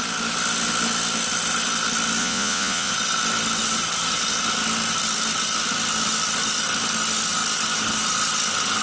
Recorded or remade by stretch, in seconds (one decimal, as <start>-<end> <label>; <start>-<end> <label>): 0.0-2.2 recorded; 2.2-2.9 remade; 2.9-8.8 recorded